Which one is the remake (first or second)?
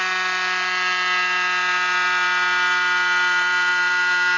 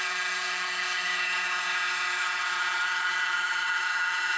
second